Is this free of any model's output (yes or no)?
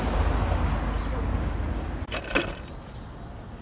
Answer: yes